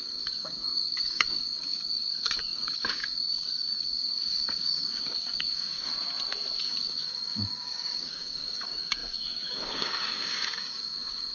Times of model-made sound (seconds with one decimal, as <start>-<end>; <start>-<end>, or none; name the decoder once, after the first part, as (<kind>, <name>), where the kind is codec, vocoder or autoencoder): 0.0-5.9 (codec, DAC); 6.6-11.3